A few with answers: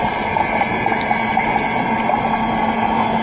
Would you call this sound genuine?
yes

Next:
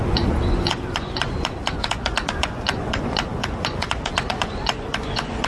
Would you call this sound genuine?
no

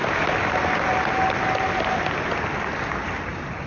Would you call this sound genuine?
yes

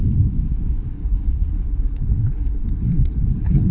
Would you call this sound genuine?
no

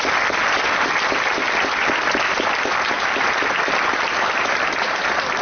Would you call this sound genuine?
yes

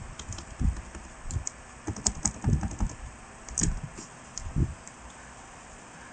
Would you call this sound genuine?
yes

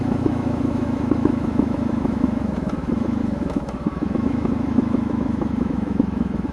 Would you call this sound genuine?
no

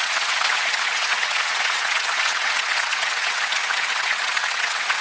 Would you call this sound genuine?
no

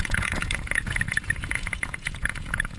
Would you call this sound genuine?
no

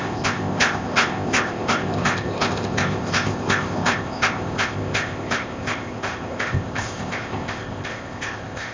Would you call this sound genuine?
no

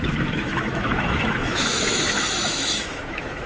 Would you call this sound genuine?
no